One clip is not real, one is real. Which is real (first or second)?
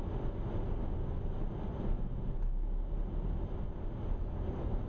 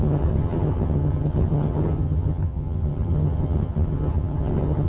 first